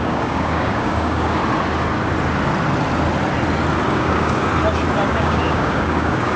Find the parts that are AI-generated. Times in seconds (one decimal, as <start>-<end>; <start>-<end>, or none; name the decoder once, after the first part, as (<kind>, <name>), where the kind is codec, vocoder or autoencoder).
0.0-1.4 (codec, DAC); 3.9-4.5; 5.1-6.4

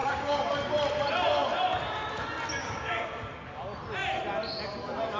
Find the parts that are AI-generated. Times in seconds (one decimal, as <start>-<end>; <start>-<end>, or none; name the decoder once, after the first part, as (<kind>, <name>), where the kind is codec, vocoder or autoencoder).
0.0-0.5 (codec, DAC); 2.6-3.2

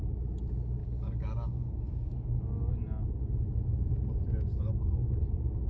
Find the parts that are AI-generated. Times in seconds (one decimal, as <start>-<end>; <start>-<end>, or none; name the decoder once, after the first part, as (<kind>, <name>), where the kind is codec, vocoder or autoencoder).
0.8-2.4 (codec, DAC); 4.5-5.2

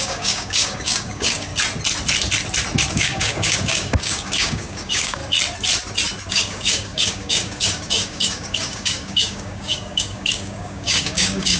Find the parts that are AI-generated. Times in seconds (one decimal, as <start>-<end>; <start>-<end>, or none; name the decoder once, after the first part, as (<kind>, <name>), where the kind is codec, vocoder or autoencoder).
0.0-1.5 (codec, DAC); 2.9-5.2; 6.3-11.6

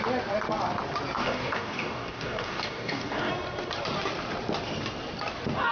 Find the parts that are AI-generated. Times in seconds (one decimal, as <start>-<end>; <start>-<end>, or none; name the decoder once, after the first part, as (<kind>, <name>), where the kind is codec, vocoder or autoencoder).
1.2-3.3 (codec, DAC)

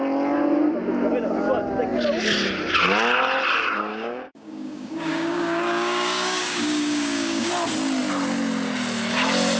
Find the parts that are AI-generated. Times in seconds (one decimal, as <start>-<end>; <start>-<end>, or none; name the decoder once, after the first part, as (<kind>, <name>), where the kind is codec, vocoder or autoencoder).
3.9-7.5 (codec, DAC)